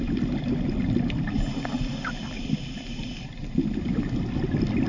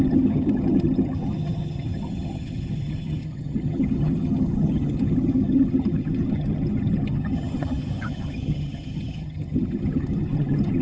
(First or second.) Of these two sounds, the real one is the first